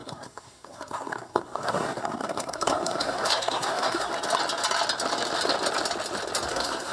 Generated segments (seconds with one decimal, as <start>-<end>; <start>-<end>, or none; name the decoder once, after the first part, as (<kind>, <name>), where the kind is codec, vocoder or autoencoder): 0.0-4.1 (codec, SNAC); 6.5-6.9